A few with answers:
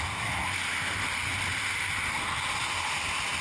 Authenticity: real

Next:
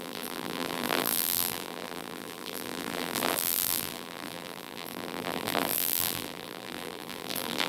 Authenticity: fake